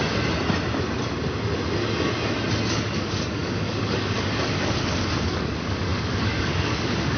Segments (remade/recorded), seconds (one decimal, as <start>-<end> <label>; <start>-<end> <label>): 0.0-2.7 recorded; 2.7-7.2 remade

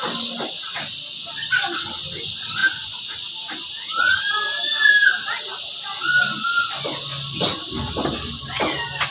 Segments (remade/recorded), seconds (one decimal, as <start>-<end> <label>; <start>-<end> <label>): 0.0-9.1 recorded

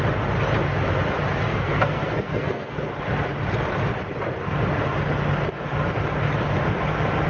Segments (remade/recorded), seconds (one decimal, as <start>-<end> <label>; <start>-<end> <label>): 0.0-1.5 recorded; 1.5-2.9 remade; 2.9-7.3 recorded

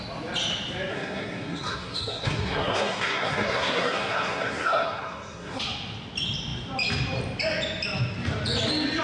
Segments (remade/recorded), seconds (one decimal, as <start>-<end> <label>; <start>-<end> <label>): 0.0-0.9 recorded; 0.9-5.6 remade; 5.6-9.0 recorded

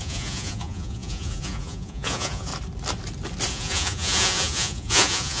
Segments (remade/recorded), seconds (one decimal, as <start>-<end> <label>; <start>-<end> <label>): 0.0-2.5 remade; 2.5-3.5 recorded; 3.5-5.4 remade

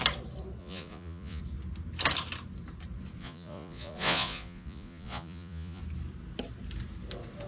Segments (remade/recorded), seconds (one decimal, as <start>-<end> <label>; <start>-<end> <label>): 0.0-0.6 recorded; 0.6-1.4 remade; 1.4-3.2 recorded; 3.2-5.8 remade; 5.8-7.5 recorded